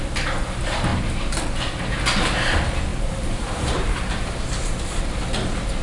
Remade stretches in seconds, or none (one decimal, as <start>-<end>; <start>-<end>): 2.9-5.0